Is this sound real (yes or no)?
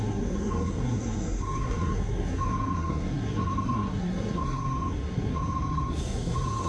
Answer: no